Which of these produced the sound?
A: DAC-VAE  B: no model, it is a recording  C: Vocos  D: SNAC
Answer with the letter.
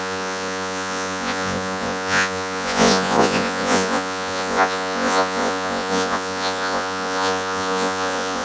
C